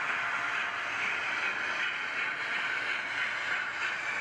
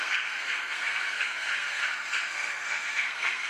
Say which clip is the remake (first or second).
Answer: second